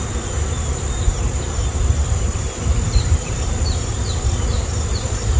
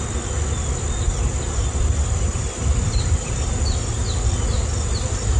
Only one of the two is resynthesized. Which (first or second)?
first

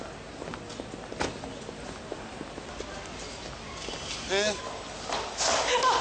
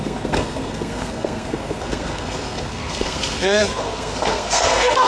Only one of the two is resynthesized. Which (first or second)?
second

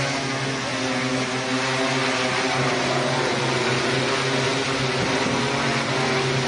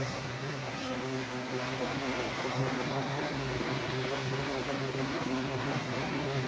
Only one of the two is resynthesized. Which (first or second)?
second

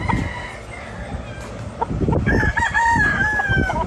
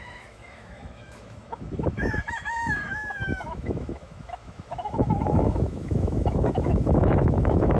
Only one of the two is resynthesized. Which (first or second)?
second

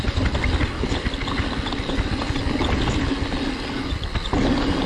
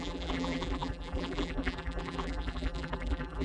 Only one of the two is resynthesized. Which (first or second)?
second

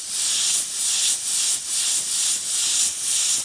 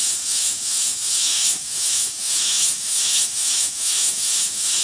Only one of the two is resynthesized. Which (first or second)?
second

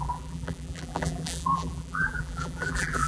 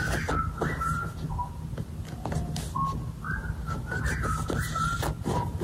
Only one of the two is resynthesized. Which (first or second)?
first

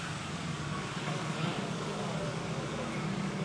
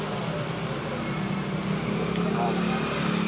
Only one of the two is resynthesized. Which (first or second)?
first